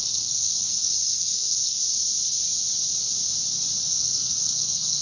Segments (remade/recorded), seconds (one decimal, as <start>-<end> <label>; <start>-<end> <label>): 0.0-1.8 remade; 1.8-3.9 recorded; 3.9-5.0 remade